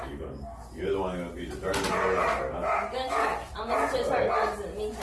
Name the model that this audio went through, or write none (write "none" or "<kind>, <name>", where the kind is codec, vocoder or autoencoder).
none